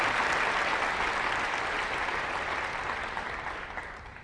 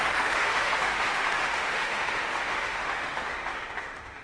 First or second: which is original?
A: first